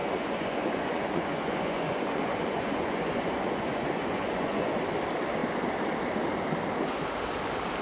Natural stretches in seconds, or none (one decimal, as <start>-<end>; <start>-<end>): 4.7-7.8